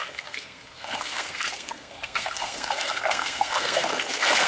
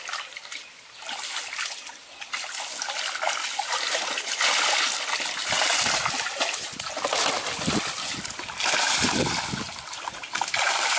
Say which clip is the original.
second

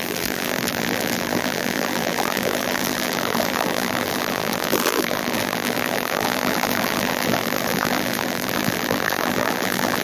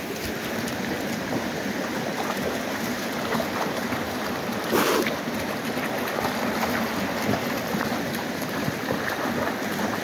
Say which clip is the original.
second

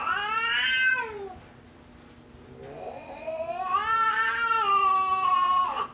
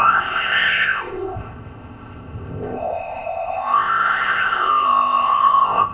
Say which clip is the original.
first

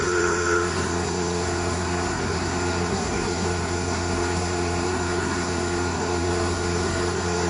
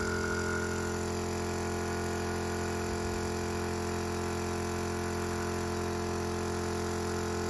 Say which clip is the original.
second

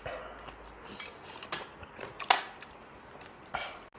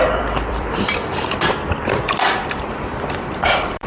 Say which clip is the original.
first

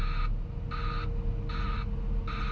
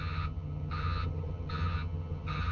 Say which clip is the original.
first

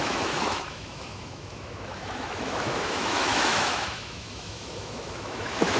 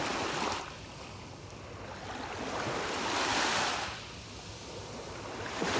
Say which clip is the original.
second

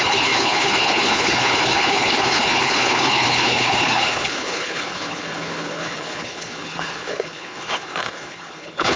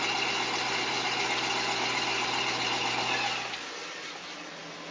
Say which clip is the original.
second